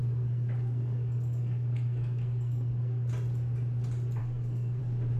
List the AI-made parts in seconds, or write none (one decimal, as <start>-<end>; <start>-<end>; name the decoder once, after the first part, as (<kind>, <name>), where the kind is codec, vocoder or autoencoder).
0.0-3.1 (codec, SNAC); 4.2-4.8